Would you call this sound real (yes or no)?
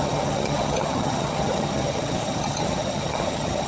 no